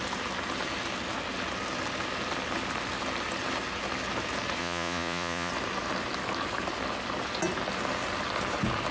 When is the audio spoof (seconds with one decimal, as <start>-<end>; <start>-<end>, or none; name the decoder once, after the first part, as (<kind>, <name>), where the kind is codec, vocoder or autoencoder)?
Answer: 4.6-5.5 (vocoder, Vocos)

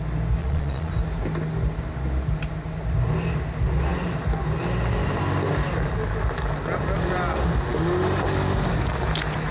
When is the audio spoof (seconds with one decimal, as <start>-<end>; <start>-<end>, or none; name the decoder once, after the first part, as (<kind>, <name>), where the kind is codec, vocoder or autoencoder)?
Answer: 0.4-0.9 (vocoder, Vocos)